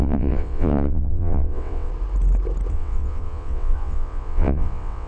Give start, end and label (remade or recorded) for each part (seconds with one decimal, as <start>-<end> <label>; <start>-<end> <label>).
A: 0.0-1.9 remade; 1.9-2.7 recorded; 2.7-5.1 remade